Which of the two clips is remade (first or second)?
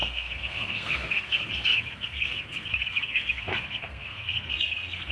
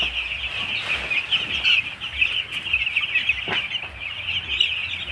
first